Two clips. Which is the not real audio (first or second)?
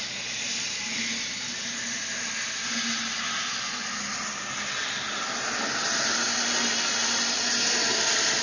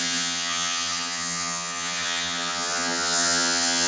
second